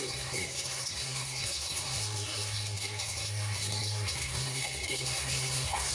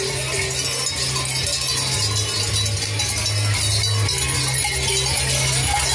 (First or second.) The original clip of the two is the second